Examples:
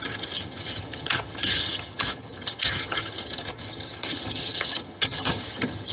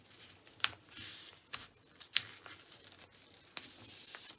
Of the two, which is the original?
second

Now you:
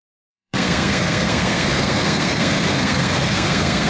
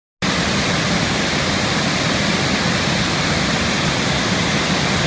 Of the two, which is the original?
second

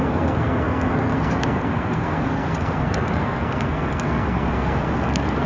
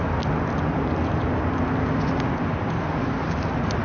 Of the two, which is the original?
second